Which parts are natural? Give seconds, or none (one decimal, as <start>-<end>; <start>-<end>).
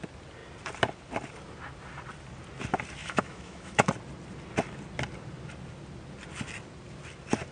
0.0-3.0; 3.9-7.5